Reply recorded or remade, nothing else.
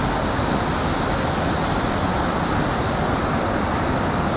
recorded